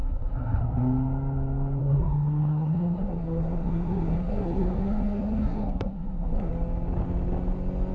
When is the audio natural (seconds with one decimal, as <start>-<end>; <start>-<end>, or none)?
0.6-1.8; 6.5-7.9